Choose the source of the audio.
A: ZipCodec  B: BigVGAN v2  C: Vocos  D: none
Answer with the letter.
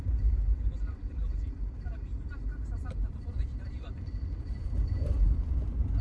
B